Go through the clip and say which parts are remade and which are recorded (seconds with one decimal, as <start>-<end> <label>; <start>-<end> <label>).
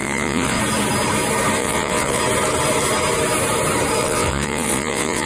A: 0.0-0.6 remade; 0.6-1.6 recorded; 1.6-2.2 remade; 2.2-4.0 recorded; 4.0-5.3 remade